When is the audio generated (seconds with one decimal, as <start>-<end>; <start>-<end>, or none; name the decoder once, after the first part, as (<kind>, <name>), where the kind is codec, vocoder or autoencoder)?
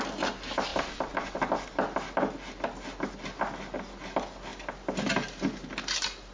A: none